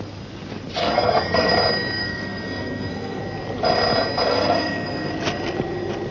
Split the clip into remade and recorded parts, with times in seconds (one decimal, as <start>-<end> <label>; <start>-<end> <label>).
0.0-0.8 recorded; 0.8-1.5 remade; 1.5-2.0 recorded; 2.0-3.2 remade; 3.2-4.3 recorded; 4.3-5.1 remade; 5.1-6.1 recorded